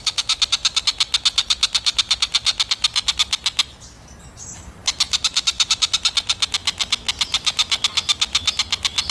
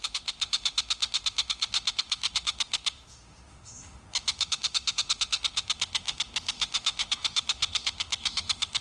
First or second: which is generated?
second